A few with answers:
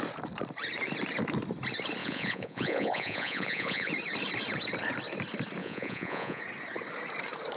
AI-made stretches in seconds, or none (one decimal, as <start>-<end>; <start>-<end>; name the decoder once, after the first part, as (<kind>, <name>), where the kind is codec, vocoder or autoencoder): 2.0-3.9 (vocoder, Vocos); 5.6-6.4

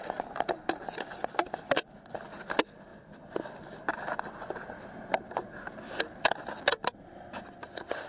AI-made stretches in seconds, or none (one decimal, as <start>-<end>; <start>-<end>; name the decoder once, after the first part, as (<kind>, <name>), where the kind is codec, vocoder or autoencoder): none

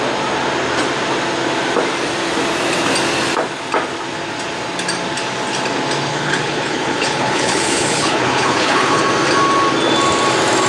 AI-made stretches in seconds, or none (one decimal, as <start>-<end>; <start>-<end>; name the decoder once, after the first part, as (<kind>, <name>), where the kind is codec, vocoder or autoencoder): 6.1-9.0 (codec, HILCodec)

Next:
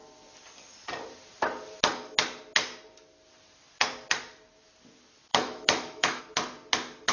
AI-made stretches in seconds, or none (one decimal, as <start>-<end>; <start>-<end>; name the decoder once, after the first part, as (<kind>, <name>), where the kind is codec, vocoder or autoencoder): 5.3-6.2 (autoencoder, DAC-VAE)

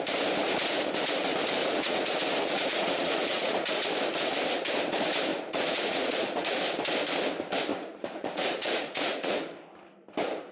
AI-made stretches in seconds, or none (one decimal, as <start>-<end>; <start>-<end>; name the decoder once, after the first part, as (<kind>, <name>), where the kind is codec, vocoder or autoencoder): 1.6-3.9 (vocoder, Vocos); 5.3-6.6; 7.7-9.4

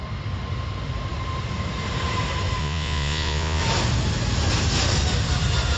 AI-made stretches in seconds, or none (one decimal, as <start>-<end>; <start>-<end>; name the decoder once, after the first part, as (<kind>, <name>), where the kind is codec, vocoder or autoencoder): 2.6-3.6 (vocoder, Vocos)

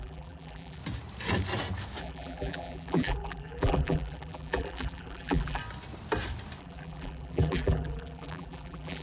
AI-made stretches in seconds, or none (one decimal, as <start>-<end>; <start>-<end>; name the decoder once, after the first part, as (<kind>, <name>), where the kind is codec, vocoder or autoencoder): 0.0-0.8 (vocoder, BigVGAN v2); 2.0-5.6; 6.6-9.0

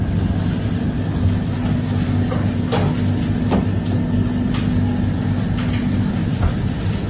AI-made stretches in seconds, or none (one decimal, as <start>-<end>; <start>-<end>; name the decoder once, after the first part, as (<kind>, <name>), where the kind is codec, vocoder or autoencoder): 6.2-7.1 (vocoder, BigVGAN v2)